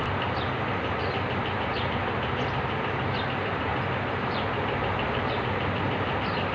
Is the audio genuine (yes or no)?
yes